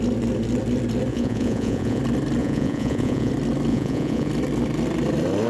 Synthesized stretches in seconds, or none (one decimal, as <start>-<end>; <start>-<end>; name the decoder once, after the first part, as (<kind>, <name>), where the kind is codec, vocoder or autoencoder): 1.1-2.0 (vocoder, Vocos); 2.4-3.3; 3.7-4.3